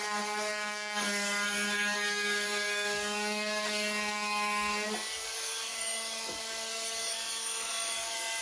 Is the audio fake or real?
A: fake